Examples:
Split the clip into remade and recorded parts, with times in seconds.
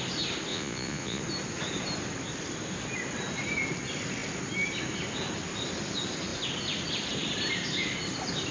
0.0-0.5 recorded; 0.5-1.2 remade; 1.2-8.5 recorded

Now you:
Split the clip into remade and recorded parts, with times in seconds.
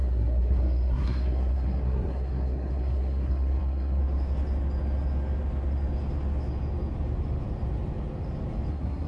0.0-4.0 remade; 4.0-8.7 recorded; 8.7-9.1 remade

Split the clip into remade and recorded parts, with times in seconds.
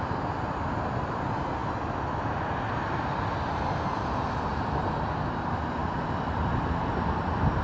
0.0-7.6 recorded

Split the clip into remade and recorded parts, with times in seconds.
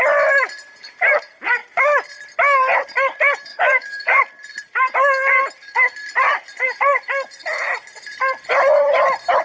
0.0-3.5 recorded; 3.5-4.2 remade; 4.2-9.4 recorded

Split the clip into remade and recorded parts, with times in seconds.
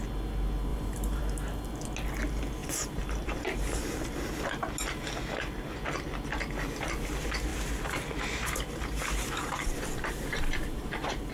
0.0-0.7 recorded; 0.7-1.2 remade; 1.2-2.6 recorded; 2.6-4.2 remade; 4.2-7.5 recorded; 7.5-11.3 remade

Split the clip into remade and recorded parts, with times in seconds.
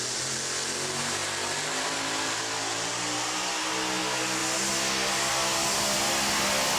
0.0-6.8 recorded